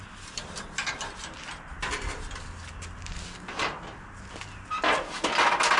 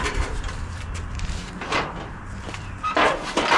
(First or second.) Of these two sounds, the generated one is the second